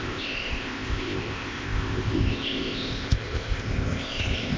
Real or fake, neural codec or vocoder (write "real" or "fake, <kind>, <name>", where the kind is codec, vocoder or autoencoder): fake, codec, ZipCodec